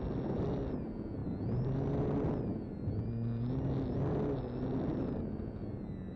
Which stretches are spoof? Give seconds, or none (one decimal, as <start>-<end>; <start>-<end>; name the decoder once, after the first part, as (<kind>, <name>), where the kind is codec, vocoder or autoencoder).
none